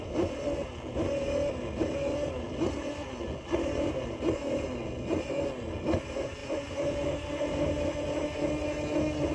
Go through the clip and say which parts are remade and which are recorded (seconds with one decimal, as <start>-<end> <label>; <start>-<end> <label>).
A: 0.0-9.3 recorded